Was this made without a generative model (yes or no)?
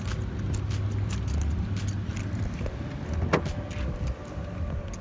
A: yes